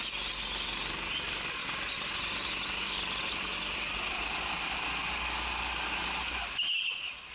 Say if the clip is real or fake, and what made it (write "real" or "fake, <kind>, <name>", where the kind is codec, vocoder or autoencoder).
real